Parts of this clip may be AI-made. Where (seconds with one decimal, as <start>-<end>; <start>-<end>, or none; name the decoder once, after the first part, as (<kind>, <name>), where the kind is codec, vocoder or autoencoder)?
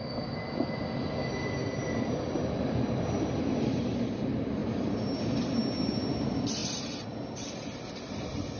none